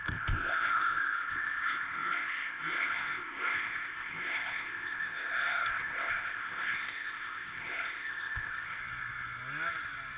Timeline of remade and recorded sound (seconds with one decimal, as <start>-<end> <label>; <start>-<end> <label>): 0.0-8.8 remade; 8.8-10.2 recorded